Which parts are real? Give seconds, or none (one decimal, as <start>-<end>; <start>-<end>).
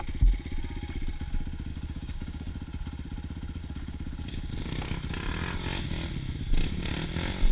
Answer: 0.0-1.7; 2.5-3.6; 4.5-7.5